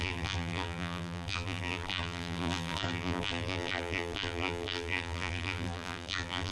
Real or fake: fake